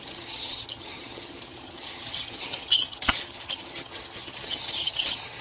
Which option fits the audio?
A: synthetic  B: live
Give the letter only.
A